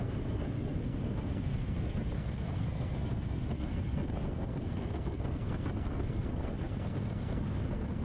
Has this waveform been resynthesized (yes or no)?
yes